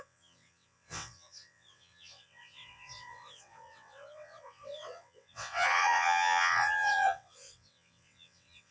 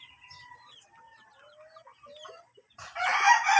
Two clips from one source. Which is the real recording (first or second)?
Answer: second